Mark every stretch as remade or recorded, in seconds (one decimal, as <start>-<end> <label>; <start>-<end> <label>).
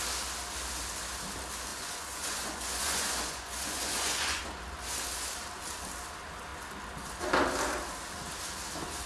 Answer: 0.0-1.7 recorded; 1.7-4.4 remade; 4.4-9.1 recorded